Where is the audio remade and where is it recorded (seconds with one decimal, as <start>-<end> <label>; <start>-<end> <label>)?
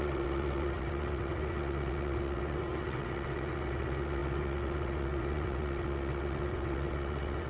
0.0-7.5 remade